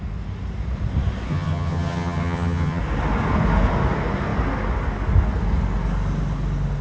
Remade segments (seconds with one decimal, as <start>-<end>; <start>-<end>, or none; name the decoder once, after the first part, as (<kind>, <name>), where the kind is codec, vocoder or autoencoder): 1.3-2.8 (vocoder, HiFi-GAN)